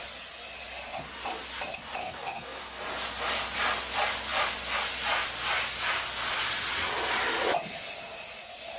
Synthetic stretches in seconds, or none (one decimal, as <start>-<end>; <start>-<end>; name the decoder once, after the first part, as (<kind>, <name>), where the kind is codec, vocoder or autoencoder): 2.0-2.6 (codec, SNAC)